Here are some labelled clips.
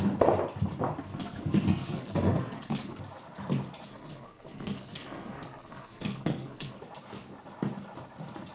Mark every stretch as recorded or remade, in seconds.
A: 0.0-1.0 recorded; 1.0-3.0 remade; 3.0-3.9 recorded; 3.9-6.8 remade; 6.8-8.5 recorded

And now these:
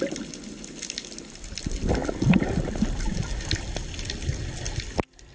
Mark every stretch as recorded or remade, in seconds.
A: 0.0-5.3 recorded

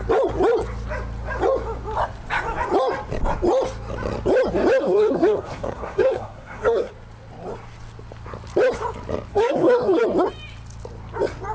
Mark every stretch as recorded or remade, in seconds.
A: 0.0-4.8 recorded; 4.8-6.9 remade; 6.9-9.3 recorded; 9.3-10.0 remade; 10.0-11.5 recorded